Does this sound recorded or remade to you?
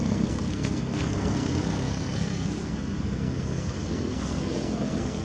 remade